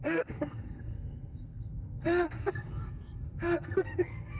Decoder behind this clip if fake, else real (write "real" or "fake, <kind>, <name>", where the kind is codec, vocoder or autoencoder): fake, codec, SNAC